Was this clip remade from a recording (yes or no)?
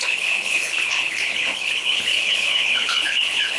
yes